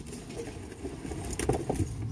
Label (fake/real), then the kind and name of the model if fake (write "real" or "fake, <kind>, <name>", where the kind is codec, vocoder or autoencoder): real